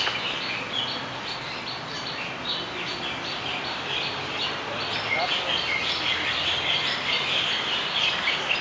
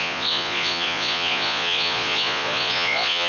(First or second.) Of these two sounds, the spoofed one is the second